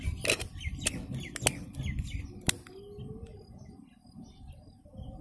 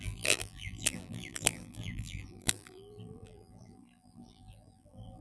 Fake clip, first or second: second